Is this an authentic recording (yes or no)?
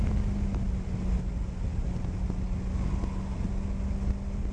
yes